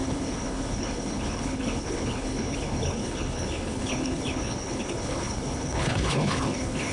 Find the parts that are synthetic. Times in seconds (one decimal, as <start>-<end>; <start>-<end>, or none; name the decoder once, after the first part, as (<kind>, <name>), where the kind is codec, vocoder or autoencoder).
0.0-6.9 (codec, HILCodec)

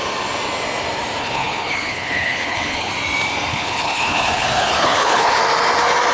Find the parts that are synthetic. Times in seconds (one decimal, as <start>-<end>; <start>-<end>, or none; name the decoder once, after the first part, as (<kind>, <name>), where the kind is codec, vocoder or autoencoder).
1.2-2.9 (codec, HILCodec); 3.5-5.4